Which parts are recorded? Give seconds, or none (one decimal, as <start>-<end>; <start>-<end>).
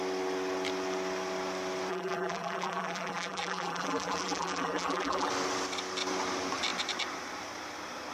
0.0-1.9; 5.3-8.1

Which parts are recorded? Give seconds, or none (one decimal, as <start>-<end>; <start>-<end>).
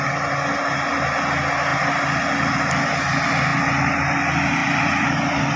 0.0-1.7; 2.6-3.5; 4.0-4.6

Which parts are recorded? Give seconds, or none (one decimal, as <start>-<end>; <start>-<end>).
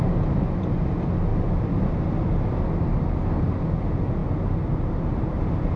0.0-5.8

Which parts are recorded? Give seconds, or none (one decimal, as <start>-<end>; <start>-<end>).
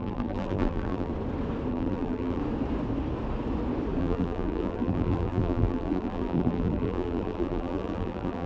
1.1-1.7; 2.4-4.0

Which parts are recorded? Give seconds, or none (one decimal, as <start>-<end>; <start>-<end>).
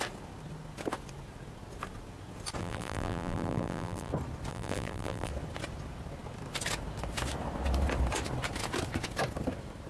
0.0-2.6; 4.1-4.5; 5.3-9.9